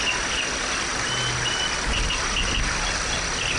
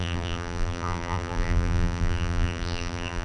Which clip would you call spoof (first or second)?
second